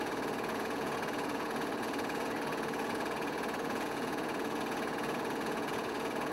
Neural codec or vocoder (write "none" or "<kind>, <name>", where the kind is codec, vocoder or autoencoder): vocoder, Vocos